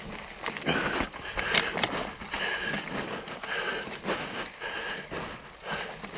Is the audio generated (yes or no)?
no